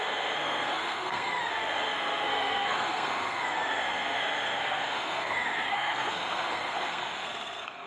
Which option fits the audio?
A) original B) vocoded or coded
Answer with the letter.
B